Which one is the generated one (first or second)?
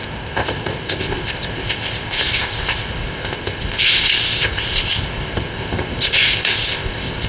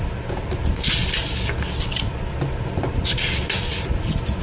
first